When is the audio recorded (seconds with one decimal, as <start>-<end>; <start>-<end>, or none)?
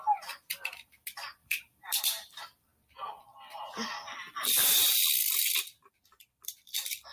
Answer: 2.7-6.1